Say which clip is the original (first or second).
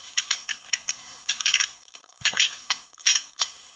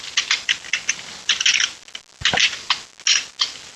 second